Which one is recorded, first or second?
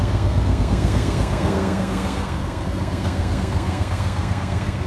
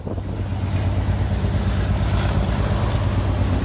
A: second